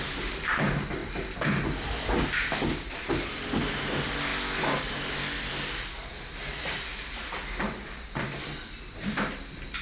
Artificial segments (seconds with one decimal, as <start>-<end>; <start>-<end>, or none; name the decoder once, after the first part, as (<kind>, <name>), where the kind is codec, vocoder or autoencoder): none